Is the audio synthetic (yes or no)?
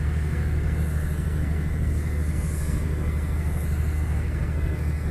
yes